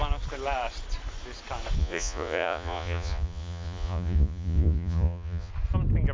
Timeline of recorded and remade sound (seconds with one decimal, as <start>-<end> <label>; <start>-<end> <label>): 0.0-1.8 recorded; 1.8-5.5 remade; 5.5-6.1 recorded